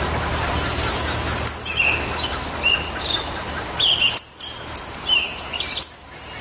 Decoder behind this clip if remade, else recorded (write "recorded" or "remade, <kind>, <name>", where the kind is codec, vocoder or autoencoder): recorded